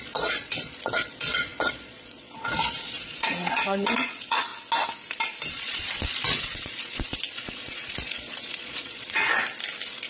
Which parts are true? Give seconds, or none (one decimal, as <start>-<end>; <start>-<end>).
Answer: 4.5-5.5; 9.3-10.1